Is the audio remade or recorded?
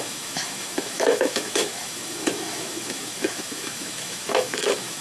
remade